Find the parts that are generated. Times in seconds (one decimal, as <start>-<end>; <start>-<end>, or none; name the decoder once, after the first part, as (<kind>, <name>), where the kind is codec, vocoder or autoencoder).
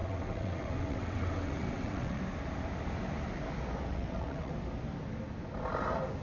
0.0-2.2 (vocoder, WaveNeXt); 3.9-4.5